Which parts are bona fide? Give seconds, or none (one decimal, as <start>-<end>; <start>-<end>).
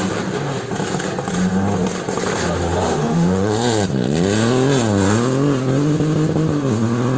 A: 0.0-3.0; 3.5-7.2